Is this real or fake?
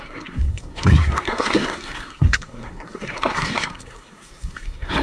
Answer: fake